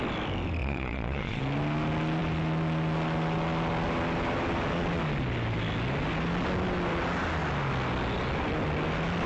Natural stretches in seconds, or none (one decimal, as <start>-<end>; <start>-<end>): 0.0-0.6; 1.4-9.3